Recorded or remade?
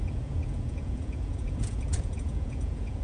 remade